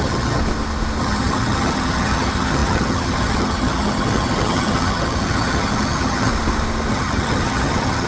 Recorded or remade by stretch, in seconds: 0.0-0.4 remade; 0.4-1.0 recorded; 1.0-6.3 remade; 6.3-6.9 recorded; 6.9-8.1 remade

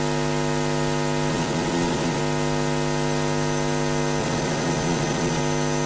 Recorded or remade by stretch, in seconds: 0.0-1.3 recorded; 1.3-2.2 remade; 2.2-4.2 recorded; 4.2-5.4 remade; 5.4-5.9 recorded

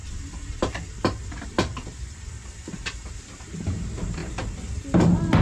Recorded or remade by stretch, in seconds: 0.0-5.4 recorded

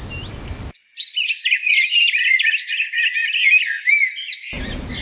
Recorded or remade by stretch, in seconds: 0.0-0.9 recorded; 0.9-3.9 remade; 3.9-5.0 recorded